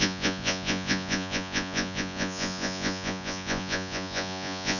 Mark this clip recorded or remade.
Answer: remade